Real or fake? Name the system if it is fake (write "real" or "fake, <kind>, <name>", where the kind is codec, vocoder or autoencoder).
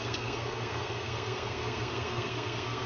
fake, codec, SNAC